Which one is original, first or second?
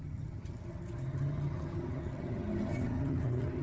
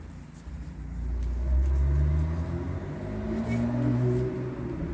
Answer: second